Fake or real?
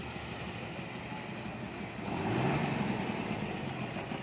real